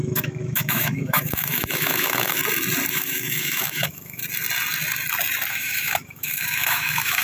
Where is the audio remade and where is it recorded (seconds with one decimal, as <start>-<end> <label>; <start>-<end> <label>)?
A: 0.0-2.4 remade; 2.4-2.9 recorded; 2.9-4.2 remade; 4.2-5.5 recorded; 5.5-7.2 remade